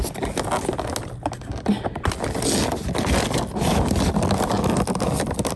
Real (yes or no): yes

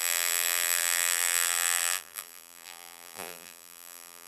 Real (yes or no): no